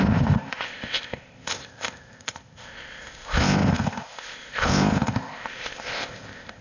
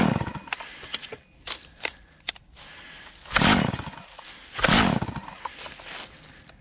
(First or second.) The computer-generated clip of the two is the first